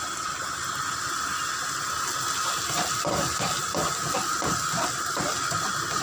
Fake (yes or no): no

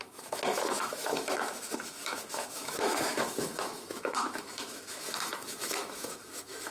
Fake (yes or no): yes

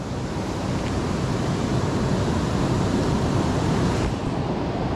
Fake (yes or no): no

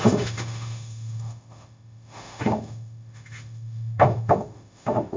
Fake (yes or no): yes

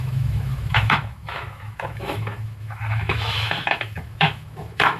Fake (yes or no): yes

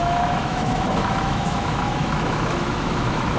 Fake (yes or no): yes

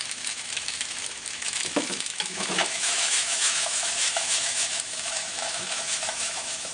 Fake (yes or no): yes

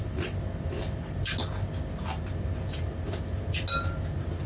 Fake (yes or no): no